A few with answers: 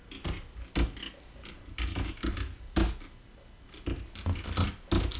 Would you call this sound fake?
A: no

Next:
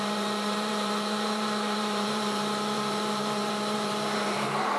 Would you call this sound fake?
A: yes